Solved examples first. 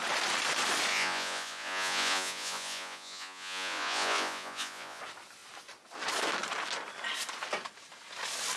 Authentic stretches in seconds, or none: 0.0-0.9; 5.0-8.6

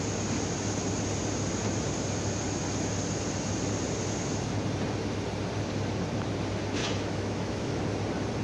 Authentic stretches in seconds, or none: 0.0-6.8; 7.8-8.4

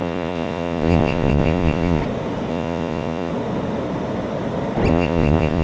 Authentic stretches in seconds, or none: 2.0-2.5; 3.3-4.9

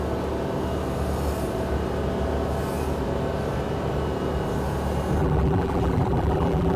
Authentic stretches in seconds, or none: 0.0-5.2